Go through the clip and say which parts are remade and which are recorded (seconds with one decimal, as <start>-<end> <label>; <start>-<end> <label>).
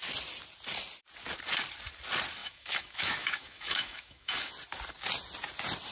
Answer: 0.0-2.4 recorded; 2.4-4.5 remade; 4.5-5.9 recorded